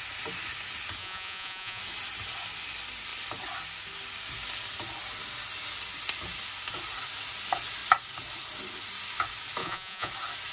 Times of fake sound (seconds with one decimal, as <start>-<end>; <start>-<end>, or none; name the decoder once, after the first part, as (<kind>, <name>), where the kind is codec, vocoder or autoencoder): 1.0-1.8 (vocoder, Vocos); 9.6-10.1

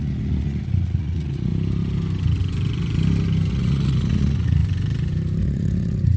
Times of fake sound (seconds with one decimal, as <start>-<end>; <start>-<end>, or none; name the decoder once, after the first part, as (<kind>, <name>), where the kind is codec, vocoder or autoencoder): 0.0-1.5 (vocoder, Vocos); 3.5-4.6; 5.4-6.2

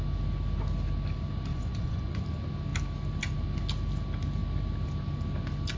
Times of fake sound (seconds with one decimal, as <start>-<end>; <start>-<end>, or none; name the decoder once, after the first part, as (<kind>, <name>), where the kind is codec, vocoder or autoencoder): 1.5-2.2 (vocoder, Vocos)

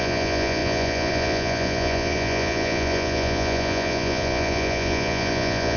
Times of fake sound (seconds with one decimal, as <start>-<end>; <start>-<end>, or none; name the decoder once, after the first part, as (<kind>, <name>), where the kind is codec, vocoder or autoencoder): 0.0-5.8 (vocoder, Vocos)

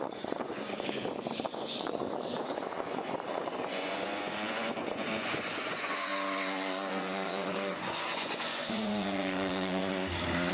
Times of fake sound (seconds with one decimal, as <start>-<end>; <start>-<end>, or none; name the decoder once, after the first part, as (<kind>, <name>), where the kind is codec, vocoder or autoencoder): 0.0-6.1 (vocoder, Vocos); 6.9-9.8

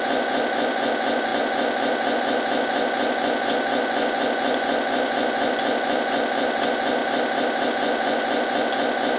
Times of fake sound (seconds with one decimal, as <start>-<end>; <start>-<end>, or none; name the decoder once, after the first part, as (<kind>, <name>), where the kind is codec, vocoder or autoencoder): 0.0-7.0 (vocoder, Vocos); 7.7-9.2

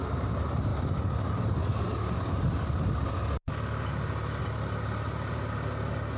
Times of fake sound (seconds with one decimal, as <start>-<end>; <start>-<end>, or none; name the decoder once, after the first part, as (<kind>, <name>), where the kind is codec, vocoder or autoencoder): none